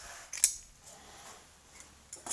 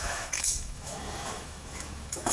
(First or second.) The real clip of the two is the first